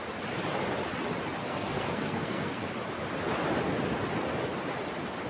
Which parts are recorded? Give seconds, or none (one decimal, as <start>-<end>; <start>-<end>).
0.0-1.4; 2.7-5.3